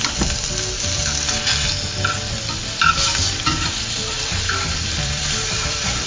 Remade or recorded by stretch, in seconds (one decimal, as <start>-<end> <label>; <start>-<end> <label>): 0.0-3.2 recorded; 3.2-6.1 remade